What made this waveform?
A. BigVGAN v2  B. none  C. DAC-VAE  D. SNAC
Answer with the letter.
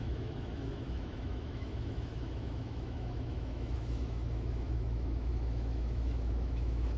C